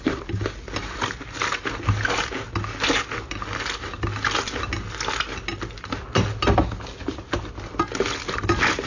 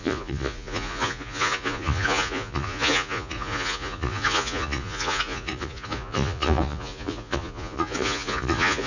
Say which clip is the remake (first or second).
second